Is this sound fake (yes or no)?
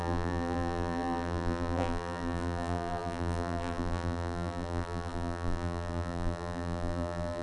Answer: yes